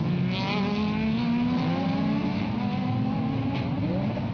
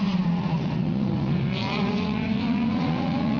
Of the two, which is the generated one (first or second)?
second